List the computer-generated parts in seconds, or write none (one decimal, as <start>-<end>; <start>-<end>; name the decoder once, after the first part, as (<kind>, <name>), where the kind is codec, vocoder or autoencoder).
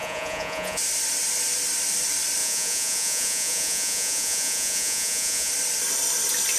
0.0-0.8 (vocoder, Vocos); 2.4-5.5